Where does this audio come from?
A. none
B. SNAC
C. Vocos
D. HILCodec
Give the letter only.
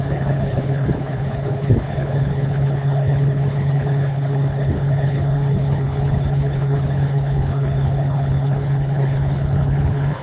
D